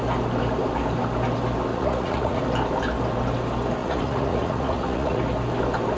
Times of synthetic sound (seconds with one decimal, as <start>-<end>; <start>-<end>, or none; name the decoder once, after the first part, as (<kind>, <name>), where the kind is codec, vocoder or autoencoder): 1.7-2.4 (vocoder, Vocos); 3.8-5.2

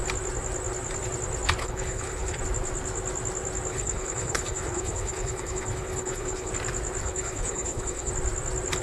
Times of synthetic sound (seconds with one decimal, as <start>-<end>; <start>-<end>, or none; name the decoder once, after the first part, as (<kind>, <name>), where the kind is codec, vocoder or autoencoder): 1.6-2.4 (codec, HILCodec); 3.7-6.5; 7.0-8.1

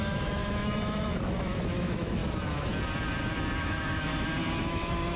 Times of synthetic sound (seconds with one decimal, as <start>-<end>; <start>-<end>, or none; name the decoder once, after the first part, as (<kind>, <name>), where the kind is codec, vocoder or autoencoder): 0.0-2.2 (autoencoder, DAC-VAE); 3.6-4.1; 4.6-5.2

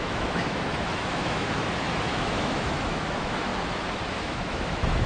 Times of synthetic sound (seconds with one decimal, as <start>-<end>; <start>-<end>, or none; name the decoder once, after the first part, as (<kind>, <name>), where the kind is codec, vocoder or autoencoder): 0.0-3.5 (autoencoder, DAC-VAE); 4.1-5.1

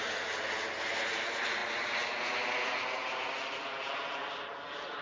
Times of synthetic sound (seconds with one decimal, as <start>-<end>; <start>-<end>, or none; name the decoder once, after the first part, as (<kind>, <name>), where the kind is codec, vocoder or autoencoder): none

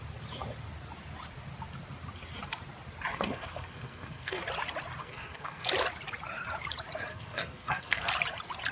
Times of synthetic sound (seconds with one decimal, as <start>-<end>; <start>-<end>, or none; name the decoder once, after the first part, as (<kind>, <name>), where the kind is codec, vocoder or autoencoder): 3.1-4.4 (codec, SNAC); 5.0-5.7; 7.1-8.1

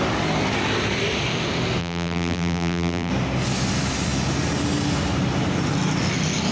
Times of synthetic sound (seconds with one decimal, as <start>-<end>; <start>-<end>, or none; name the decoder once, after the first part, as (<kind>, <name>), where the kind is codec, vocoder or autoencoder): 1.8-3.1 (vocoder, BigVGAN v2)